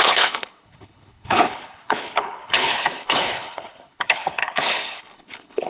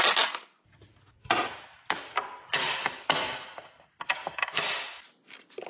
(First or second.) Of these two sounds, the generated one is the first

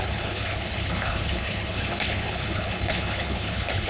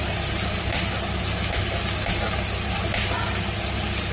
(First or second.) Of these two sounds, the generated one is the first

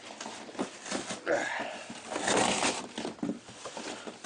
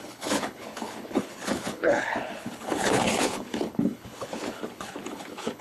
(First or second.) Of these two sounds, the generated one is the second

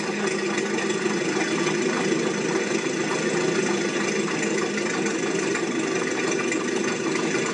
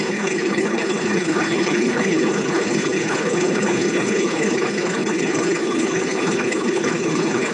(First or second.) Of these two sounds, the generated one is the second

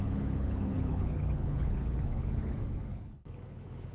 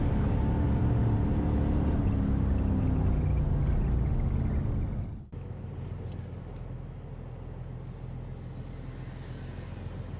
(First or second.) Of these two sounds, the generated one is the first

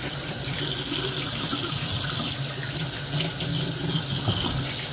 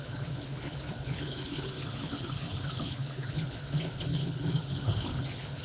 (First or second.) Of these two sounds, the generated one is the second